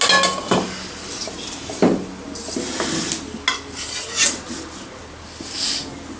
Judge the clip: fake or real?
real